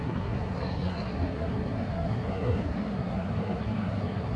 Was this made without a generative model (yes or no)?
no